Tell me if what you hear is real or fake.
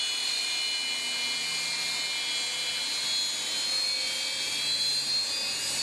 real